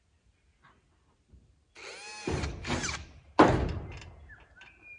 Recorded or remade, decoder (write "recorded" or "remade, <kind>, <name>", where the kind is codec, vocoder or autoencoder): recorded